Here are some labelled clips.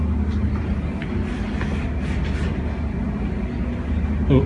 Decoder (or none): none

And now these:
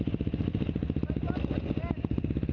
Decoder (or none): none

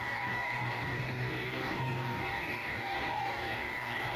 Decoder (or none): codec, DAC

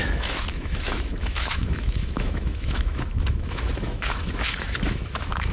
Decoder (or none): autoencoder, DAC-VAE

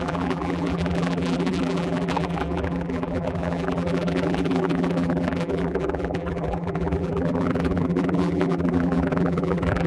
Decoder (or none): vocoder, BigVGAN v2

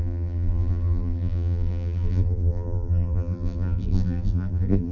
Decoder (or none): vocoder, BigVGAN v2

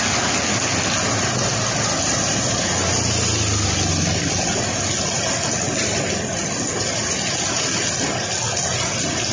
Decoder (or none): none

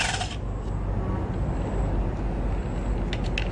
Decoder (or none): none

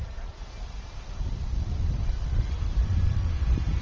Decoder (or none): none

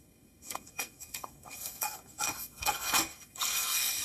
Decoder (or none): codec, SNAC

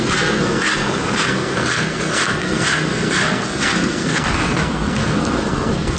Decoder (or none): codec, SNAC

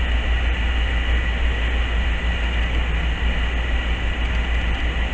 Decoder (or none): none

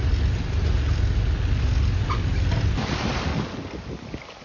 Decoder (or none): none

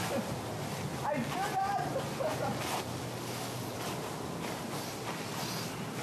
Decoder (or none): none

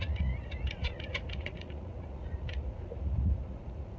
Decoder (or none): vocoder, Vocos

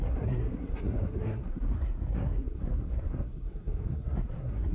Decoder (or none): codec, SNAC